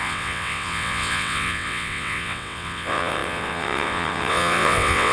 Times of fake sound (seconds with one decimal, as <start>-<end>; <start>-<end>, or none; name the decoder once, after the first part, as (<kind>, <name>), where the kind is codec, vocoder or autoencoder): 0.0-5.1 (vocoder, WaveNeXt)

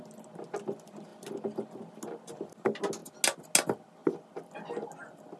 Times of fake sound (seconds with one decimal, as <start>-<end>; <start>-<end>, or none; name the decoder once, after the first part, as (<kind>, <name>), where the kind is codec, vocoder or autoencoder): none

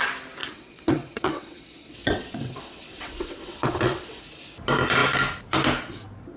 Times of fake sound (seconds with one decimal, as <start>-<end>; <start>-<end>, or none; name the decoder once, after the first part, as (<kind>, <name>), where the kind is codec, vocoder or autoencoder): 0.4-4.2 (vocoder, WaveNeXt)

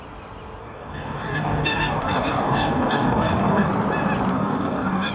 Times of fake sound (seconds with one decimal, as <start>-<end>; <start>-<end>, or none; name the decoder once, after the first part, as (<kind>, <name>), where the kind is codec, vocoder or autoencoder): 0.6-3.7 (codec, DAC); 4.3-5.1

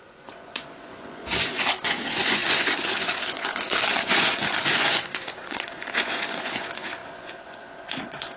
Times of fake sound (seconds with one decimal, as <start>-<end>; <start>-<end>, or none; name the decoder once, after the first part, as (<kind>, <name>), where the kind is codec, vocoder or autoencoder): 0.0-8.4 (vocoder, Vocos)